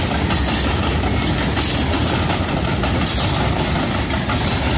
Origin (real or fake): real